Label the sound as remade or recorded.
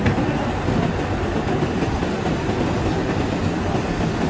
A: recorded